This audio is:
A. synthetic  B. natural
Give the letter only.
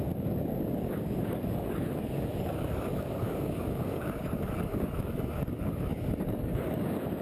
A